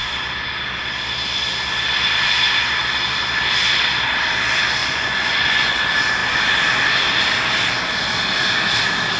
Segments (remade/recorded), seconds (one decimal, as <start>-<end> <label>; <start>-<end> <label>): 0.0-4.8 recorded; 4.8-5.8 remade; 5.8-9.2 recorded